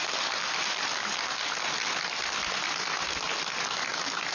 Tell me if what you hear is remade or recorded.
recorded